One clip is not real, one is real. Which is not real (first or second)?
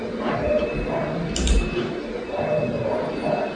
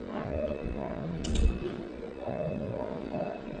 second